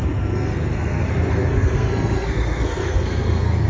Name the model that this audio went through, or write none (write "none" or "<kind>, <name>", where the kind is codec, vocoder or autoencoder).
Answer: codec, SNAC